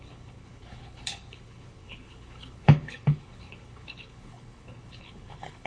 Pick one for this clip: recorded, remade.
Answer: remade